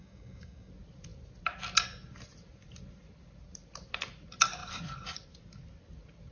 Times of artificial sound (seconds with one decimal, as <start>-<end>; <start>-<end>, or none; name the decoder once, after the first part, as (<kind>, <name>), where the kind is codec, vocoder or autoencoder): 0.0-0.7 (codec, DAC)